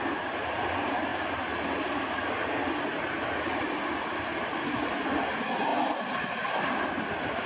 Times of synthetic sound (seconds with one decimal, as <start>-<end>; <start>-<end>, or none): none